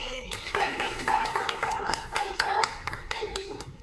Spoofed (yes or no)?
yes